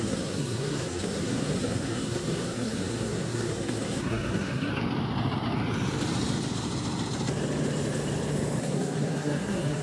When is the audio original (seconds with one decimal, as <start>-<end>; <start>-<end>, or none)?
4.7-8.6